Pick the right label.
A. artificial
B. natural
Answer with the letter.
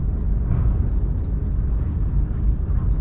B